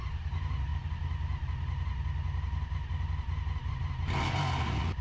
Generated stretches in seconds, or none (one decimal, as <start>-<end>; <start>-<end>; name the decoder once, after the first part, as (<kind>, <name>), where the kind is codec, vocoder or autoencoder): none